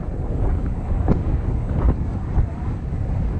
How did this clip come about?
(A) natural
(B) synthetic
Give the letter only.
B